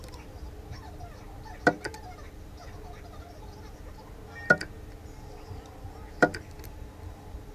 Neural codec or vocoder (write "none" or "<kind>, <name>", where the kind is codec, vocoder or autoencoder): none